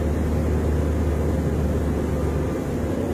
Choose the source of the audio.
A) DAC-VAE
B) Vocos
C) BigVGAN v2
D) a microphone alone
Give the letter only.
D